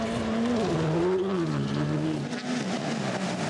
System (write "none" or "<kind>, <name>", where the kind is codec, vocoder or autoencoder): none